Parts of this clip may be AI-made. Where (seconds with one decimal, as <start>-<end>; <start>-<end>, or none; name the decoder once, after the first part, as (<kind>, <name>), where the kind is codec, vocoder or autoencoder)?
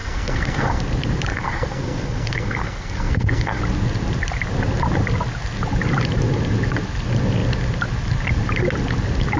0.0-0.8 (codec, SNAC); 1.3-3.6